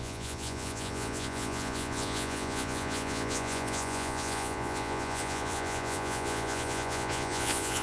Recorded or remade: remade